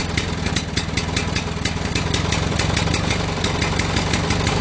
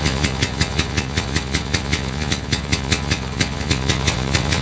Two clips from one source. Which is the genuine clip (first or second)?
first